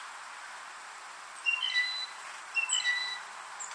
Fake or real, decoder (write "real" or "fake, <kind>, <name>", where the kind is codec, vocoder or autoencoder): fake, vocoder, BigVGAN v2